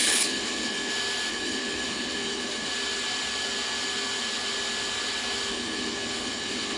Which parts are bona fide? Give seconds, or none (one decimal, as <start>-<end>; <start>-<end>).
0.9-1.3; 2.7-5.5